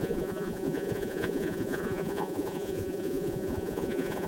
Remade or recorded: remade